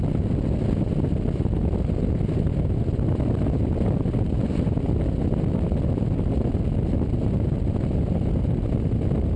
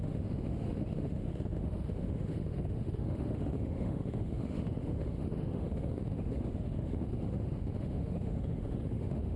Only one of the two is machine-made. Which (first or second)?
second